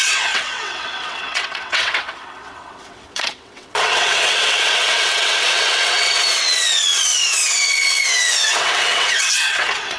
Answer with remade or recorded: remade